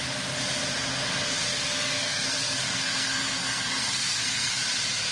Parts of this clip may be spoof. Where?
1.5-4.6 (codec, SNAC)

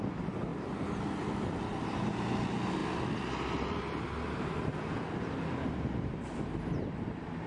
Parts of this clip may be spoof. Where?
none

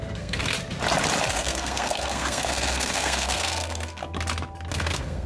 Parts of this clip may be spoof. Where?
0.0-0.5 (codec, SNAC); 1.3-4.0; 4.7-5.3

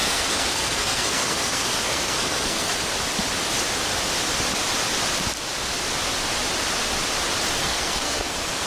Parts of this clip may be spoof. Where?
0.0-2.7 (codec, SNAC); 7.6-8.7

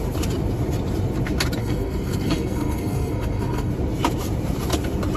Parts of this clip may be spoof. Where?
1.6-3.7 (codec, SNAC)